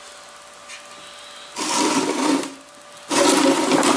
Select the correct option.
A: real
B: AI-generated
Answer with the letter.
A